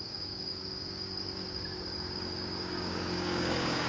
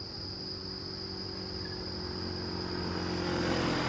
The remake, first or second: first